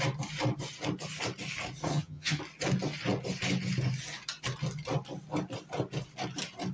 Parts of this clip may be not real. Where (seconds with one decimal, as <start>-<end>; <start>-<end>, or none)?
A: 1.9-2.4